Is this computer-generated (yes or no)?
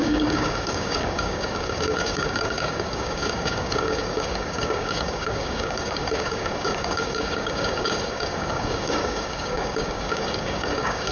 yes